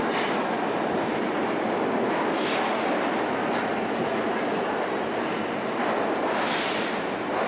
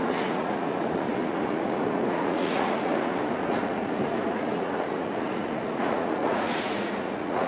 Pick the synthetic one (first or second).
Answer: second